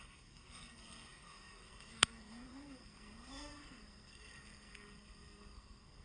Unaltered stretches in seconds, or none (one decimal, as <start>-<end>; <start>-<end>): none